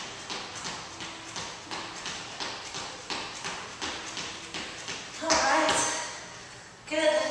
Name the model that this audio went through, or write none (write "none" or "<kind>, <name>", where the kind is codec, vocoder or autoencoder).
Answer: none